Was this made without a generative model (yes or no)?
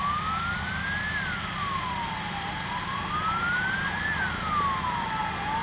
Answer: yes